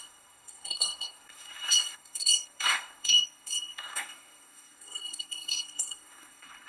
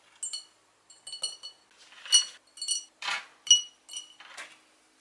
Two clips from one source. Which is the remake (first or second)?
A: first